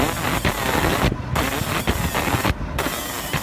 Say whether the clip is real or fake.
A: real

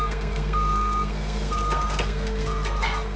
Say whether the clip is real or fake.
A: fake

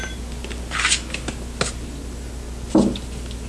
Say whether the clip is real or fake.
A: real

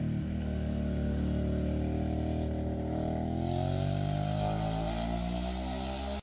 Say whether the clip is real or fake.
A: real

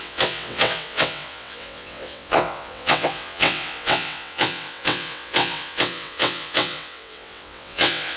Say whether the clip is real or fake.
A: fake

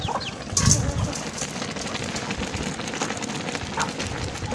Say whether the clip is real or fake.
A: real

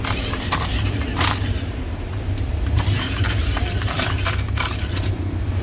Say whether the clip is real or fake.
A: fake